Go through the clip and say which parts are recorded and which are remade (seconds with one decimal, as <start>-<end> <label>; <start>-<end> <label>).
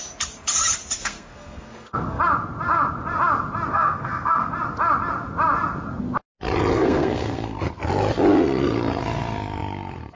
0.0-1.0 recorded; 1.0-2.2 remade; 2.2-3.7 recorded; 3.7-4.5 remade; 4.5-6.7 recorded; 6.7-7.6 remade; 7.6-10.2 recorded